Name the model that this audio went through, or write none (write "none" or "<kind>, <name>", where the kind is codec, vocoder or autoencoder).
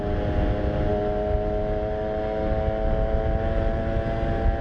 none